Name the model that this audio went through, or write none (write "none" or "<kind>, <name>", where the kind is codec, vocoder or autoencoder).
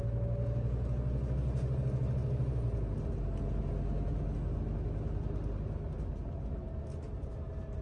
none